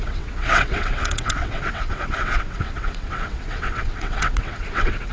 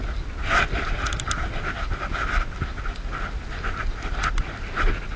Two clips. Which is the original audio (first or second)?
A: second